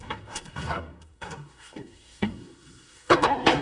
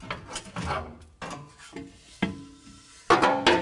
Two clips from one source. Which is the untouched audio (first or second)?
second